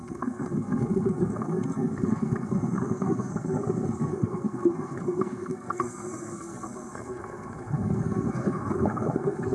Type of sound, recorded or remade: remade